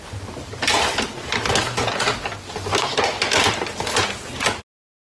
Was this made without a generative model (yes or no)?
yes